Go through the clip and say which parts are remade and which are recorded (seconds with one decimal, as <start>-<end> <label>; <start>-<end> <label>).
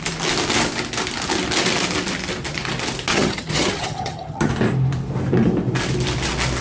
0.0-3.1 recorded; 3.1-4.5 remade; 4.5-6.6 recorded